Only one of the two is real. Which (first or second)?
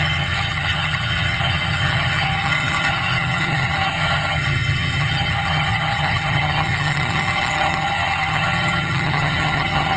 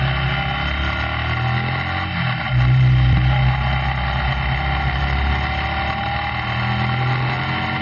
second